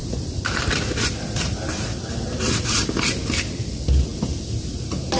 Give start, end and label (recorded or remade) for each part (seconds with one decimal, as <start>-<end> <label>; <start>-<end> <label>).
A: 0.0-3.0 remade; 3.0-5.2 recorded

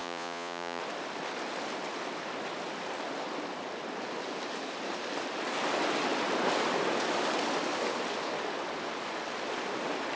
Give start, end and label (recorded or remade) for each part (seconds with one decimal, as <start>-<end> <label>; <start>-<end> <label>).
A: 0.0-0.8 remade; 0.8-10.2 recorded

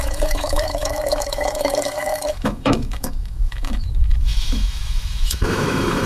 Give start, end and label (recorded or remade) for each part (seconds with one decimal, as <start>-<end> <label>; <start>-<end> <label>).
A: 0.0-6.1 remade